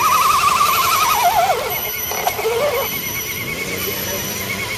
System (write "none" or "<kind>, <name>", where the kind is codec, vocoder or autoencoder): vocoder, BigVGAN v2